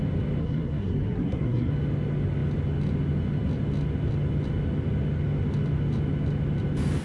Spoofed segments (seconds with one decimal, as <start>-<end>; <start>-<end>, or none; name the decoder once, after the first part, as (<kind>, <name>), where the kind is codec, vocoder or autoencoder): 0.4-1.7 (codec, SNAC)